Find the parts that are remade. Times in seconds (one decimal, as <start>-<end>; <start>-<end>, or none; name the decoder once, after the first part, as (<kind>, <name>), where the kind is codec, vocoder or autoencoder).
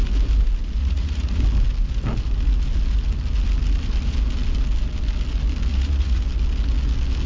0.8-1.4 (vocoder, Vocos); 5.7-6.2